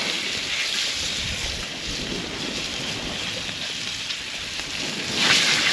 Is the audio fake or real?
real